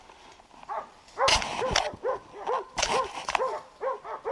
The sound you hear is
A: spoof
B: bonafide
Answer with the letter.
B